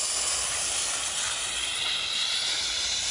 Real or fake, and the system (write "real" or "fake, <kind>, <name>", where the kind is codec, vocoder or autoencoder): real